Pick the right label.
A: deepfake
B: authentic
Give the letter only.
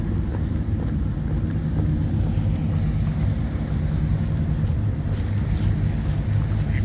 B